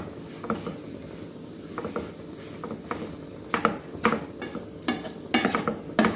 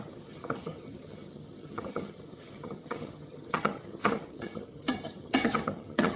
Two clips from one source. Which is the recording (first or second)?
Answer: first